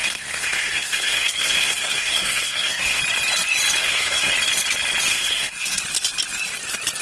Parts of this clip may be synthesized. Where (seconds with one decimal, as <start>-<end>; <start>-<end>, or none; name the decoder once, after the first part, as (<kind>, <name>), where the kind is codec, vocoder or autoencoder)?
0.0-3.0 (codec, SNAC); 3.8-4.3; 5.1-5.8